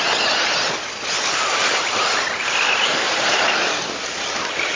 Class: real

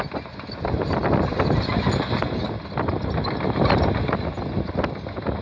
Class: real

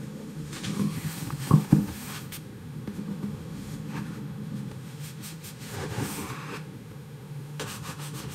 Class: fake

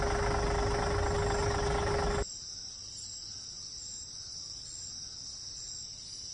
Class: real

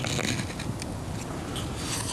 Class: real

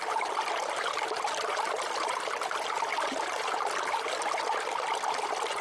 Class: real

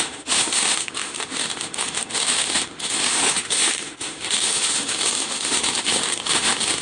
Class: fake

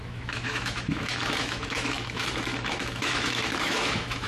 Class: fake